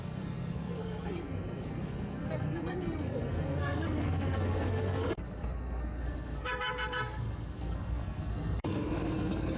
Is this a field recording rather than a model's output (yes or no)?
no